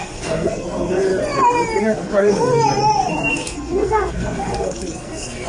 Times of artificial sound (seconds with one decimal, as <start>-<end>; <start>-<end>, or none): 0.0-1.1; 1.8-2.5; 3.3-5.5